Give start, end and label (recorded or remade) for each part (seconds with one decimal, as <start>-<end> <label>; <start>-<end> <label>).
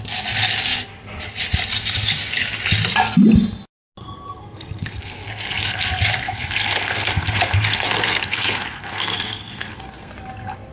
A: 0.0-4.0 recorded; 4.0-5.8 remade; 5.8-6.2 recorded; 6.2-10.1 remade; 10.1-10.7 recorded